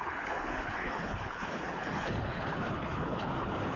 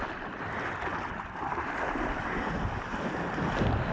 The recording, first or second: second